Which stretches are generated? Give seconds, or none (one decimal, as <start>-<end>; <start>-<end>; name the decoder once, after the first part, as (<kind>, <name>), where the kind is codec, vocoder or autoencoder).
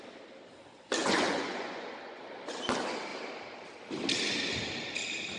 1.0-2.2 (vocoder, Vocos)